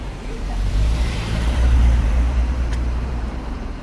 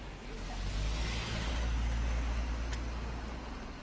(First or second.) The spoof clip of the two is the first